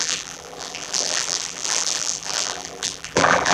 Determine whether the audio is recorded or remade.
remade